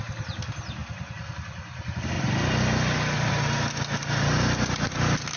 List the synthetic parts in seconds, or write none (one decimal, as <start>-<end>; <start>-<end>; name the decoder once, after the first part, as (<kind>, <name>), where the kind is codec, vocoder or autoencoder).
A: none